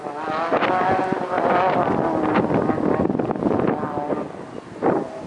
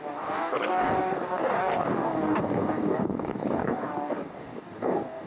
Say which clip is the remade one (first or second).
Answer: second